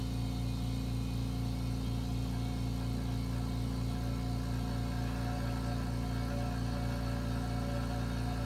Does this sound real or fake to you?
real